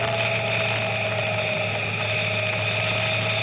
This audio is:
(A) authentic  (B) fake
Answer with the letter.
A